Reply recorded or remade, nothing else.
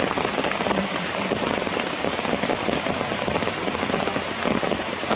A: recorded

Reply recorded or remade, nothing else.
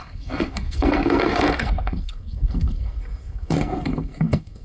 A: remade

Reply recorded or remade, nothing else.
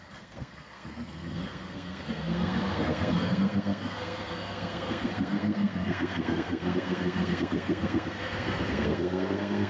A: remade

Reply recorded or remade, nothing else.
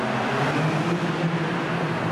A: recorded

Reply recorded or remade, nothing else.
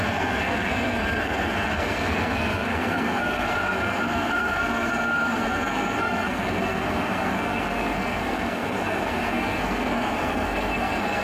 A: remade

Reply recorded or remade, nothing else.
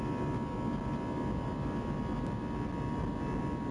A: recorded